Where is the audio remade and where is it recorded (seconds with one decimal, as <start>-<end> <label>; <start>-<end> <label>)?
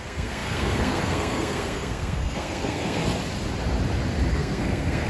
0.0-3.0 remade; 3.0-4.3 recorded; 4.3-5.1 remade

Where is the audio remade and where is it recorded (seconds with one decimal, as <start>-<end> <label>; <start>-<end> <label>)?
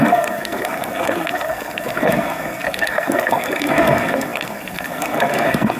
0.0-5.8 remade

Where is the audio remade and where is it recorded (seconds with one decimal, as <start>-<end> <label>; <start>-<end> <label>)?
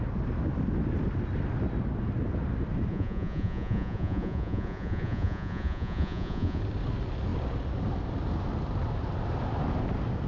0.0-2.9 recorded; 2.9-6.6 remade; 6.6-10.3 recorded